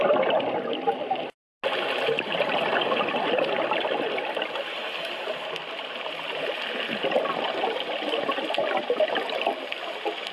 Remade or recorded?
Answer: recorded